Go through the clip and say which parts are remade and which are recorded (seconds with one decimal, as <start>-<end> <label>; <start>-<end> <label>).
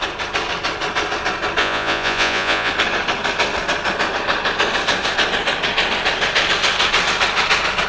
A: 0.0-1.6 recorded; 1.6-2.7 remade; 2.7-7.9 recorded